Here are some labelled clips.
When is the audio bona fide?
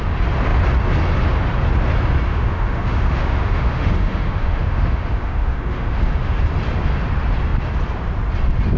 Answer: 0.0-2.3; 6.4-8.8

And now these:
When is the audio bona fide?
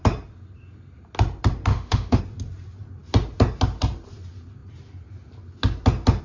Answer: 0.0-1.7; 2.2-6.2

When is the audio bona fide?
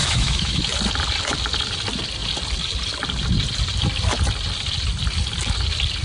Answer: 0.6-6.0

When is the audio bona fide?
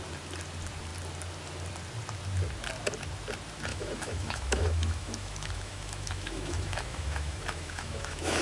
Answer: 0.0-3.7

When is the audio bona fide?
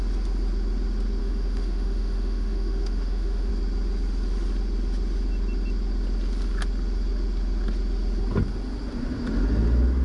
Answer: 0.0-1.2; 3.5-10.0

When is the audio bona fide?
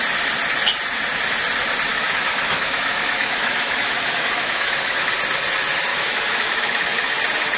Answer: 0.0-1.9; 5.1-5.9; 7.1-7.6